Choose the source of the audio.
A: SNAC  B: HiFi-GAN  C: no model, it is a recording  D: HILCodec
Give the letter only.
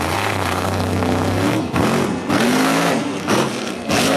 A